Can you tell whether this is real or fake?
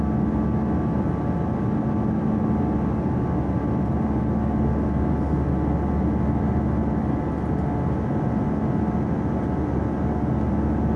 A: real